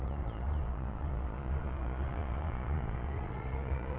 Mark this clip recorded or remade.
remade